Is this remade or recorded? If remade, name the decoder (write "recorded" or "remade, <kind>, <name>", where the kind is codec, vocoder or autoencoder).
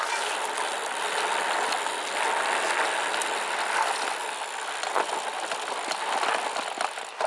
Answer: recorded